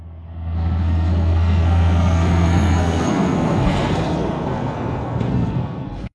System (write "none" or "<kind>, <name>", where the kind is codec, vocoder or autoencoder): codec, SNAC